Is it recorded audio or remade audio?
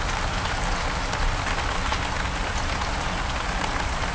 recorded